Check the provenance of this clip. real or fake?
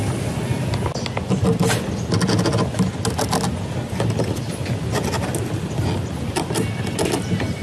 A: real